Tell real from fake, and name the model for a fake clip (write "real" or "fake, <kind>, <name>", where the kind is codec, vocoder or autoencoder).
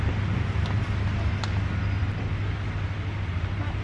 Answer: real